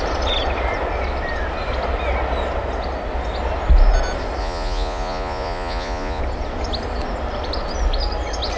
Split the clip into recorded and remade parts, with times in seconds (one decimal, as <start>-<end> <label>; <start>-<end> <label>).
0.0-4.4 recorded; 4.4-6.2 remade; 6.2-8.6 recorded